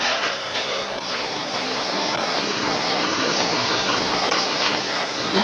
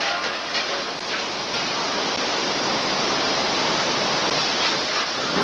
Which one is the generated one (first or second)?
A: first